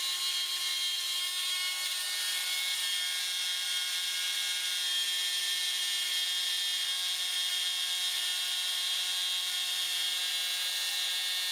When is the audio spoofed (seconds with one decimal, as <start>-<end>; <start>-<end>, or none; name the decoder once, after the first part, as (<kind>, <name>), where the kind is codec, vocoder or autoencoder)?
none